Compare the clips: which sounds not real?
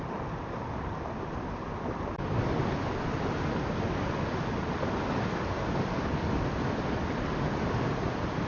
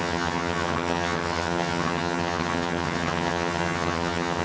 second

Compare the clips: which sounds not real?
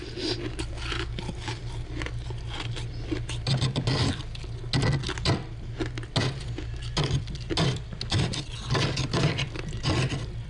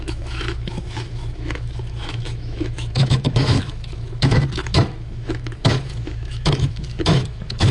second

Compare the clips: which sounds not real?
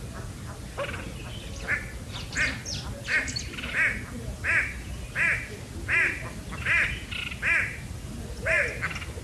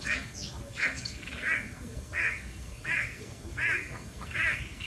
second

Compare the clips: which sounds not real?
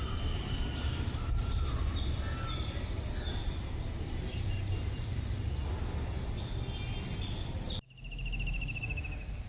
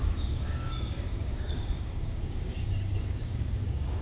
second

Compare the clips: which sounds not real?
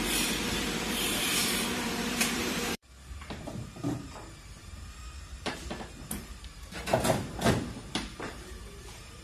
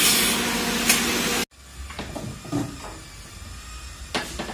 first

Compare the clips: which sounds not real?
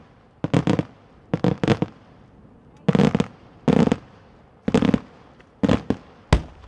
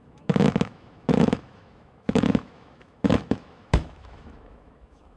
second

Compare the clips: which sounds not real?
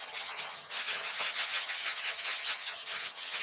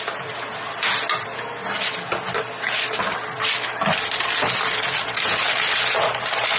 first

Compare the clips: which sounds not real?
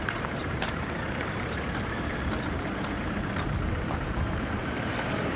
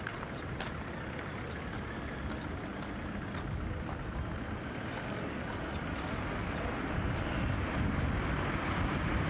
first